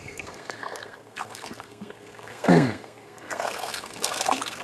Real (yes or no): no